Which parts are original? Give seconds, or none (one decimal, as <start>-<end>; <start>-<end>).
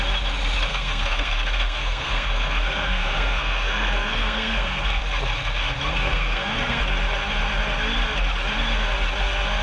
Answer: 0.0-0.7; 5.0-5.9; 6.8-9.6